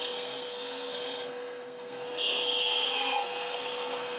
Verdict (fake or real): fake